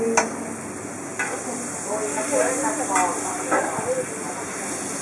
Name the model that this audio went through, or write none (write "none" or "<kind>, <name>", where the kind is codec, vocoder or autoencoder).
none